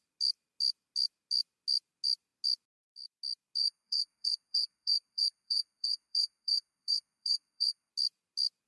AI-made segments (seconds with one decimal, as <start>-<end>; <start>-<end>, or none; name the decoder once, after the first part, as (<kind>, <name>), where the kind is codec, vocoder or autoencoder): 3.6-7.9 (codec, SNAC)